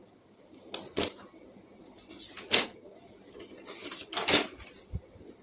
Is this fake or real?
fake